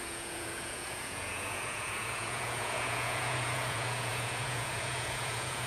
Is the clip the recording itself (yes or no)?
no